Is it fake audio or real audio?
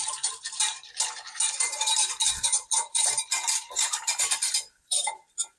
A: fake